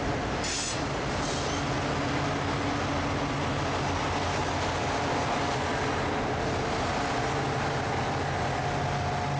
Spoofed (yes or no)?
no